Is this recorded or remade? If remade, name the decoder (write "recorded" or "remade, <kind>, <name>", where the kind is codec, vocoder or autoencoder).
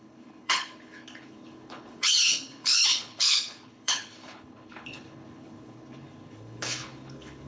remade, codec, HILCodec